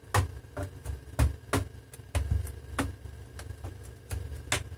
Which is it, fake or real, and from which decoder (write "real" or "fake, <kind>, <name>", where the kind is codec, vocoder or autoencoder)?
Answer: real